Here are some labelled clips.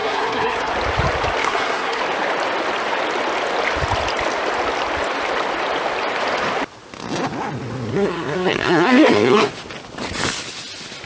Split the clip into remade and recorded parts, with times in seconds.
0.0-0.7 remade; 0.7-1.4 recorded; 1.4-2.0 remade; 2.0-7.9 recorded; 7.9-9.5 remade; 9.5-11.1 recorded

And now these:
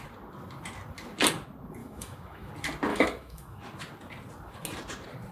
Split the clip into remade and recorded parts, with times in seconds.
0.0-1.8 recorded; 1.8-2.5 remade; 2.5-2.9 recorded; 2.9-3.6 remade; 3.6-5.3 recorded

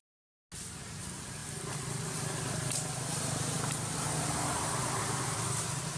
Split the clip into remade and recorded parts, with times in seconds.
0.0-1.4 recorded; 1.4-5.0 remade; 5.0-6.0 recorded

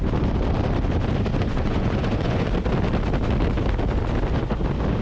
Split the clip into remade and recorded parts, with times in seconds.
0.0-1.3 recorded; 1.3-2.5 remade; 2.5-5.0 recorded